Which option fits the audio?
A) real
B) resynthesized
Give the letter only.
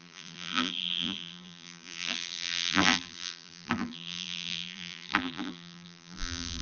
B